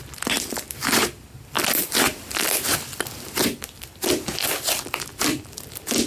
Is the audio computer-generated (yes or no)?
no